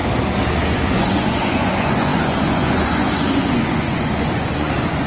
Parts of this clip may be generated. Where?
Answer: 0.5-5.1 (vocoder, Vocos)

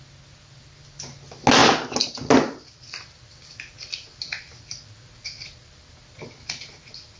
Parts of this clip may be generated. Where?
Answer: none

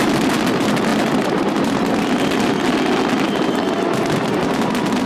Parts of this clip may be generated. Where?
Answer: none

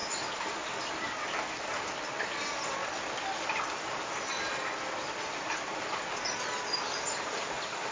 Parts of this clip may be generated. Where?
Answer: none

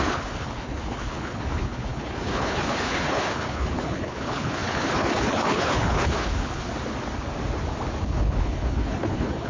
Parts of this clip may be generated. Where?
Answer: 0.0-6.7 (codec, HILCodec); 8.0-9.5

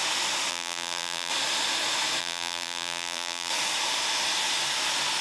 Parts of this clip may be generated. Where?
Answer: 0.5-1.3 (vocoder, BigVGAN v2); 2.2-3.5

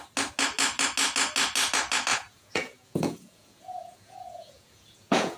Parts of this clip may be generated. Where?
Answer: 2.1-5.4 (vocoder, Vocos)

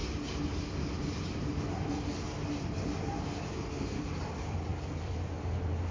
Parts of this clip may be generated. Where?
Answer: none